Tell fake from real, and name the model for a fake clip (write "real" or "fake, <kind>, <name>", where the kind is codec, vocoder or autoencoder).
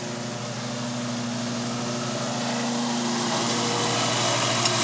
real